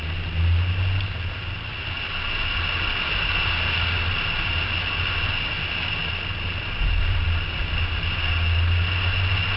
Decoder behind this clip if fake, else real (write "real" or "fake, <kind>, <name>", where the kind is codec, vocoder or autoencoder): real